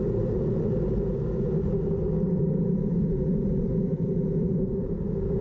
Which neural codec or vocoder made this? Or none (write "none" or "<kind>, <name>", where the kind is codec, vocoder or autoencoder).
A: none